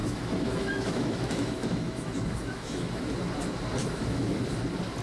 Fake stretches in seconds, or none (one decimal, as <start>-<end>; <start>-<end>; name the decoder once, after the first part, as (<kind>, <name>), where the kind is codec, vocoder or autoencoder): 0.0-3.0 (autoencoder, DAC-VAE); 3.8-4.4